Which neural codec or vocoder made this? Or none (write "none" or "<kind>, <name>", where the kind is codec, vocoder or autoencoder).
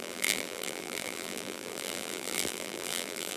vocoder, BigVGAN v2